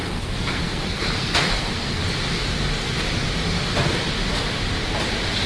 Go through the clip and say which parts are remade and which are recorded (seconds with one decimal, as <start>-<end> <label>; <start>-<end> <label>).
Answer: 0.0-2.0 remade; 2.0-5.5 recorded